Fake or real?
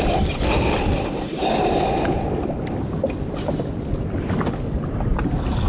real